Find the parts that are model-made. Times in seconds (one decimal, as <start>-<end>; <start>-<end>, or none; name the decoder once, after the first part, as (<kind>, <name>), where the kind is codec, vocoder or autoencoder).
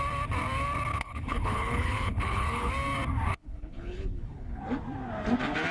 0.9-2.7 (codec, HILCodec); 3.3-4.6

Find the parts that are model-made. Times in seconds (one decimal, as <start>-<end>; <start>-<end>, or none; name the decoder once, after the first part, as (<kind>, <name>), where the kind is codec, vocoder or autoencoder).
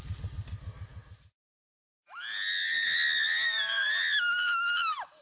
none